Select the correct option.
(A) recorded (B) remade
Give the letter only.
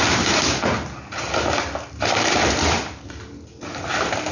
A